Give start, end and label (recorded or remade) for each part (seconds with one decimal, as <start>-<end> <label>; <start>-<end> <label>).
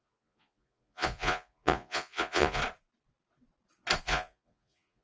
0.0-2.6 remade; 2.6-4.0 recorded; 4.0-5.0 remade